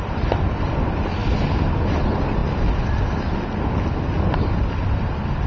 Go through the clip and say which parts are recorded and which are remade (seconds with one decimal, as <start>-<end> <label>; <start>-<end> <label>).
0.0-1.2 remade; 1.2-2.0 recorded; 2.0-2.4 remade; 2.4-4.0 recorded; 4.0-5.5 remade